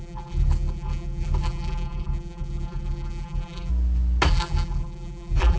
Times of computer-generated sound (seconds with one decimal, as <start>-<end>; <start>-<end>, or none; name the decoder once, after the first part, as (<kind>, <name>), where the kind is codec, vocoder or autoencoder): 0.0-3.7 (vocoder, BigVGAN v2); 4.3-5.6

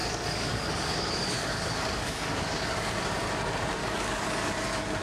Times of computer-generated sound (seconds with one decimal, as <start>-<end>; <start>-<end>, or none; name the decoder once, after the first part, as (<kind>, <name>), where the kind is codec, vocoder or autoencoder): 0.0-2.9 (codec, DAC); 3.8-4.5

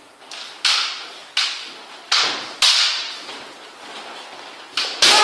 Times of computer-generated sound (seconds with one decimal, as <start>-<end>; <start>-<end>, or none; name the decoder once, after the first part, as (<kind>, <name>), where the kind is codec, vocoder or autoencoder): none

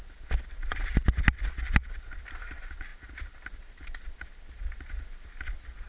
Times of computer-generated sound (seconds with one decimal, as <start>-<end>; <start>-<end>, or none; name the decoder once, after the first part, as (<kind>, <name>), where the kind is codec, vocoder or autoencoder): none

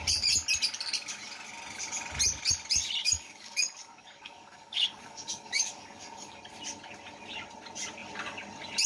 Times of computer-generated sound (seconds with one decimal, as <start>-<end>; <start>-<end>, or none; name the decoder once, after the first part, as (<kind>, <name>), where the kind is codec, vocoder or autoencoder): 3.0-6.4 (codec, DAC)

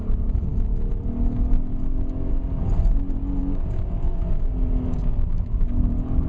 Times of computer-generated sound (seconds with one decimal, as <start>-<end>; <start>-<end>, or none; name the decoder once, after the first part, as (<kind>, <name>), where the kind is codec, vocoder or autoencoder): 3.4-4.2 (codec, DAC)